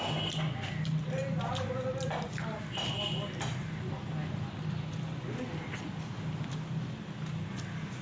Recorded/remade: recorded